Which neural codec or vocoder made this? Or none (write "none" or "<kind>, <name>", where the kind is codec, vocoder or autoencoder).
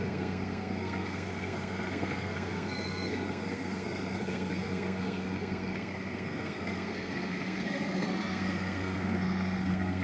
codec, SNAC